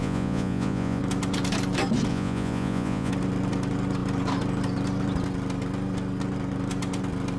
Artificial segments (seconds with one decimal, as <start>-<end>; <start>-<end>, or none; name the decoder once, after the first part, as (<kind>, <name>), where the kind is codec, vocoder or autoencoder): 0.0-1.0 (vocoder, Vocos); 2.1-3.1